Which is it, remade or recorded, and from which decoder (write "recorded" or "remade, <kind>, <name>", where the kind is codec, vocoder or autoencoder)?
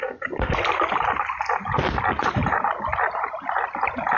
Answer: recorded